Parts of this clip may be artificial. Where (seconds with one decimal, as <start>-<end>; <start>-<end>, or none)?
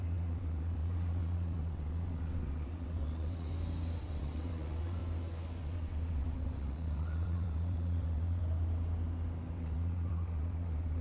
0.0-3.5; 4.0-5.0; 5.6-8.4; 9.5-11.0